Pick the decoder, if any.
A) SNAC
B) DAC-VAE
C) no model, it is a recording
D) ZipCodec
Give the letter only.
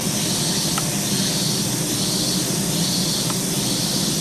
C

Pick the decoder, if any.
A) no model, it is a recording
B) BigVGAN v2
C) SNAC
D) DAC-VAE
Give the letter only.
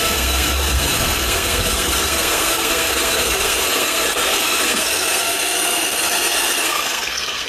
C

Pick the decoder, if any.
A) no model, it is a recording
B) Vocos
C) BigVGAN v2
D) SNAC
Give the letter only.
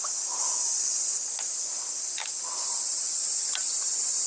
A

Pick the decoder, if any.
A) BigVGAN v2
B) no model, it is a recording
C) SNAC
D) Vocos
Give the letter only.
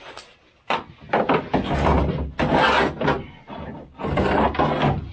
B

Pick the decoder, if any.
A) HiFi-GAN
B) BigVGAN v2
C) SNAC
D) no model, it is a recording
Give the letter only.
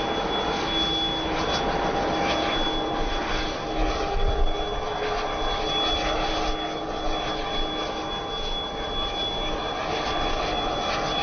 D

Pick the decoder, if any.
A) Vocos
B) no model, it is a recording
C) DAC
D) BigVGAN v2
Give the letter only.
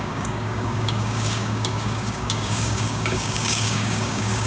C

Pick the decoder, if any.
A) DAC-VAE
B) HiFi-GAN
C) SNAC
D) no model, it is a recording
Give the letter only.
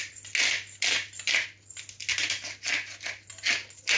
D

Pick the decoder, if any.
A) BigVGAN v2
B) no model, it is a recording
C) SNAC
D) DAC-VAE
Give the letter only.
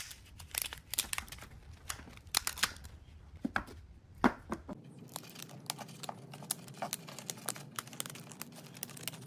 B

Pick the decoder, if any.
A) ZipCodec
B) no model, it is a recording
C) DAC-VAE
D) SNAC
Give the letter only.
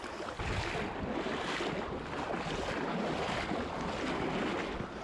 B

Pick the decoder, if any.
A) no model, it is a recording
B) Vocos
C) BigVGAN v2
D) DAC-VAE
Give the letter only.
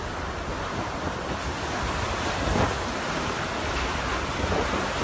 A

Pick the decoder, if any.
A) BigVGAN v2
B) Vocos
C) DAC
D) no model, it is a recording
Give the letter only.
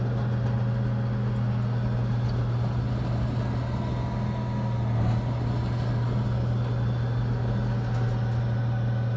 D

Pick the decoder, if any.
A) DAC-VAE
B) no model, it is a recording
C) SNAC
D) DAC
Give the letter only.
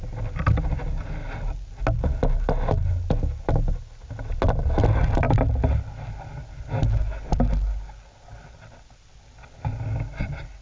B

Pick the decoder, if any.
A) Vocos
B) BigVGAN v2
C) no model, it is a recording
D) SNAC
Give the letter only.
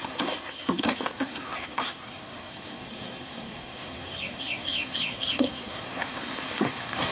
D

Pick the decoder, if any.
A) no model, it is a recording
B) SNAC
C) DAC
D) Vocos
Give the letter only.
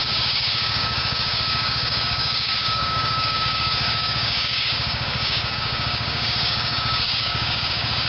C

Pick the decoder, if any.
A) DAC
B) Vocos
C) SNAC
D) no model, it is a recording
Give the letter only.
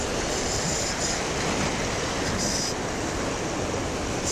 D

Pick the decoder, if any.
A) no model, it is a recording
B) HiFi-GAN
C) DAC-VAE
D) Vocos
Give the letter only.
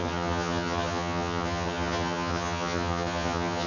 B